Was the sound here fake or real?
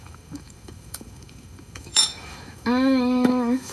fake